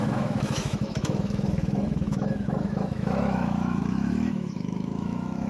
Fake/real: fake